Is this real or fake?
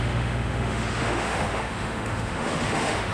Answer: fake